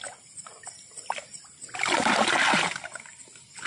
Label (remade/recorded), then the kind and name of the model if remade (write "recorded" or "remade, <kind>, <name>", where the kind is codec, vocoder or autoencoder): recorded